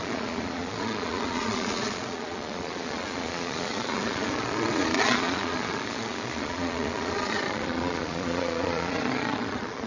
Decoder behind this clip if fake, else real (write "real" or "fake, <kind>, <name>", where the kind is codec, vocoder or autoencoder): fake, vocoder, Vocos